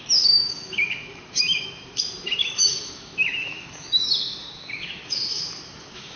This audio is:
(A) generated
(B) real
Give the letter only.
A